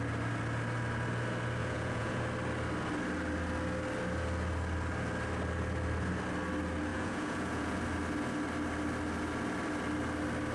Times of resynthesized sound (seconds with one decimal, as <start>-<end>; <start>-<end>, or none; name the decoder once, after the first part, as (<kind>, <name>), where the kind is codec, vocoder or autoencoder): 1.6-2.2 (vocoder, Vocos); 6.9-7.8